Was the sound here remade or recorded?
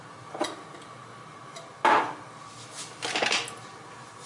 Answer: recorded